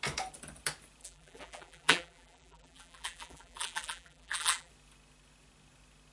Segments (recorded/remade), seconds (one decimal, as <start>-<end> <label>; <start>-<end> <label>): 0.0-1.0 recorded; 1.0-4.7 remade; 4.7-6.1 recorded